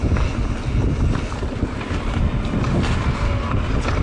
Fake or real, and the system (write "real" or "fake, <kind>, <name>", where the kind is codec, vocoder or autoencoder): real